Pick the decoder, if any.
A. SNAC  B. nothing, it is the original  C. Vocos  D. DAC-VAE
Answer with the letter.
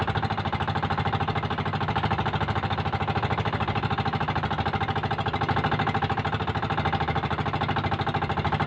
B